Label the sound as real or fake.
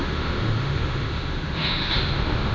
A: fake